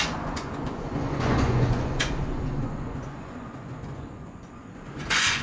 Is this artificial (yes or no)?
yes